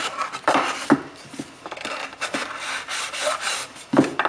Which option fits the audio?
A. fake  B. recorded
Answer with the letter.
B